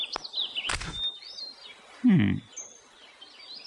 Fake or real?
real